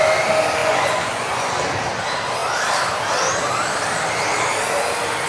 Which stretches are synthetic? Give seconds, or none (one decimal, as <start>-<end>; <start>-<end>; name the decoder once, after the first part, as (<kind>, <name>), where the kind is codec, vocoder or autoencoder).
0.6-1.5 (vocoder, Vocos)